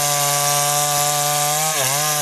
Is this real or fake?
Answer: real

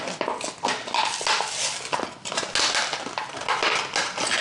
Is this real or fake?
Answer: real